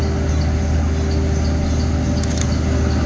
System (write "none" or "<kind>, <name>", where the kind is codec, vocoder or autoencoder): none